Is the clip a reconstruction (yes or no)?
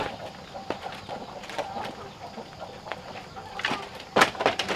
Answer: no